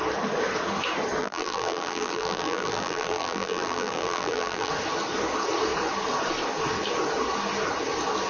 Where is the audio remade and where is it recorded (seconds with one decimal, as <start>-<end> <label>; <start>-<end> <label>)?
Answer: 0.0-1.2 recorded; 1.2-4.7 remade; 4.7-8.3 recorded